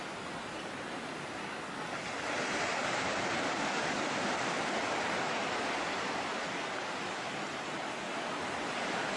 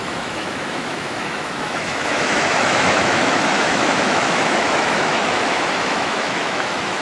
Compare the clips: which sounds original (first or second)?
first